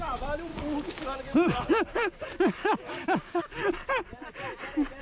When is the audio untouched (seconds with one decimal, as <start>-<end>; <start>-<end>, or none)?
0.0-0.5; 3.4-5.0